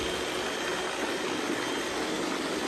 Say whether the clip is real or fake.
real